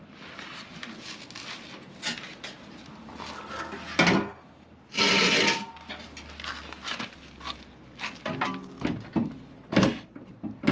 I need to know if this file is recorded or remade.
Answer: recorded